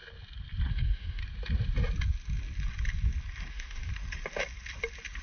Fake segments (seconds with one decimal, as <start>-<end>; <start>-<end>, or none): 0.7-1.2; 3.5-3.9